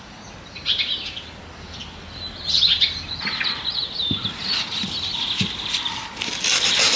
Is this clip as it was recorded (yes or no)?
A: yes